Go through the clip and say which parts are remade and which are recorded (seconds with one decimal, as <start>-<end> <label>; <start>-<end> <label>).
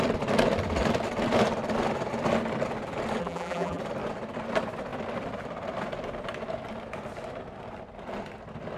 0.0-3.2 recorded; 3.2-3.8 remade; 3.8-8.8 recorded